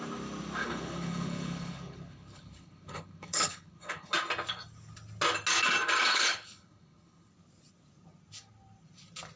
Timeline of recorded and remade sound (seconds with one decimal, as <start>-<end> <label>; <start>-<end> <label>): 0.0-0.6 recorded; 0.6-4.1 remade; 4.1-6.1 recorded; 6.1-7.3 remade; 7.3-9.4 recorded